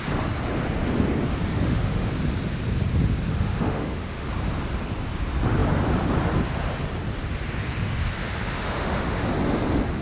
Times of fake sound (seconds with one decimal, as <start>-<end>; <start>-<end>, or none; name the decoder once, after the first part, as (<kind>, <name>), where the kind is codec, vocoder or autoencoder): 1.5-2.1 (autoencoder, DAC-VAE); 3.3-4.3; 8.2-9.3